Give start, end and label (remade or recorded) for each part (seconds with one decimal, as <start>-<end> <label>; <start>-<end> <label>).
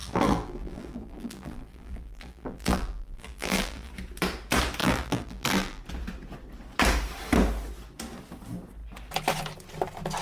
0.0-3.9 remade; 3.9-4.8 recorded; 4.8-5.8 remade; 5.8-10.2 recorded